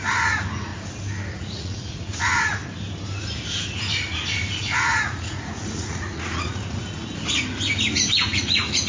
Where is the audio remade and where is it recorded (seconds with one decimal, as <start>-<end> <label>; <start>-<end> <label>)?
0.0-0.7 remade; 0.7-1.3 recorded; 1.3-2.6 remade; 2.6-4.6 recorded; 4.6-7.1 remade; 7.1-8.3 recorded; 8.3-8.9 remade